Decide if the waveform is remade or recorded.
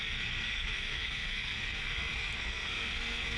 remade